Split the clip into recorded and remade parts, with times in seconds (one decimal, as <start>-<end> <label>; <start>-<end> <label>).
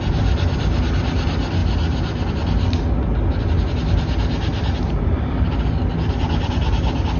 0.0-7.2 recorded